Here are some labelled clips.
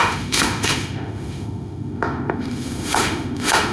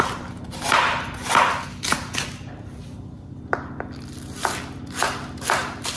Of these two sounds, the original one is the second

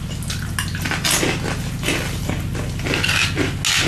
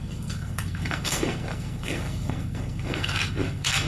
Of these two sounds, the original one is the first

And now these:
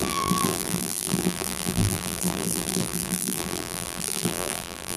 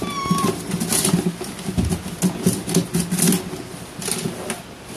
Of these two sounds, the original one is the second